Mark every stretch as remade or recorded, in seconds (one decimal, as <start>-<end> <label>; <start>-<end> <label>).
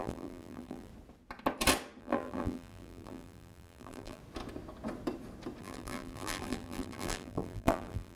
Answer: 0.0-0.9 remade; 0.9-2.0 recorded; 2.0-4.2 remade; 4.2-5.6 recorded; 5.6-8.2 remade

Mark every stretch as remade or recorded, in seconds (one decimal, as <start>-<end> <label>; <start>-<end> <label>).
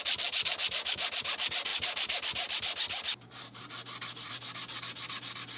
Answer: 0.0-5.6 recorded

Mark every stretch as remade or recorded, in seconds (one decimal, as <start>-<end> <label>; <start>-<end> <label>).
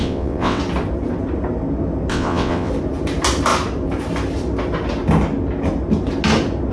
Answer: 0.0-0.6 remade; 0.6-2.1 recorded; 2.1-2.7 remade; 2.7-6.7 recorded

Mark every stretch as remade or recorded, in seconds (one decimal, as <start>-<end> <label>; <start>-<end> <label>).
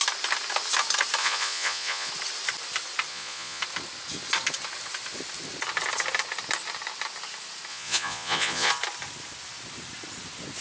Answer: 0.0-1.2 recorded; 1.2-2.1 remade; 2.1-3.1 recorded; 3.1-3.6 remade; 3.6-7.7 recorded; 7.7-8.7 remade; 8.7-10.6 recorded